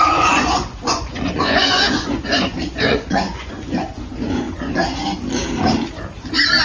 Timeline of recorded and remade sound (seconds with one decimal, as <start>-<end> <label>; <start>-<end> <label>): 0.0-4.8 remade; 4.8-6.6 recorded